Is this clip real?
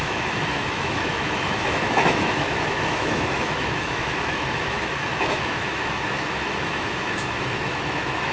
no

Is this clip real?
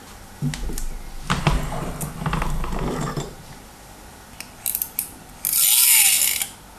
yes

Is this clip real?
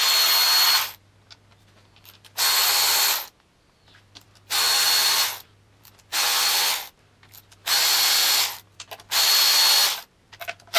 yes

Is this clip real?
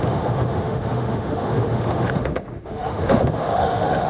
no